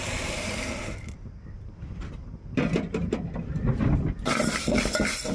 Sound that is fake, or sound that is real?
fake